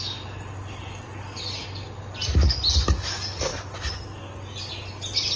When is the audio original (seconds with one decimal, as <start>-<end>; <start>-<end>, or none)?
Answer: 0.0-5.4